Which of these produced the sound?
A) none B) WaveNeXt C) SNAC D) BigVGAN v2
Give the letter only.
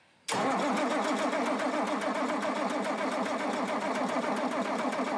A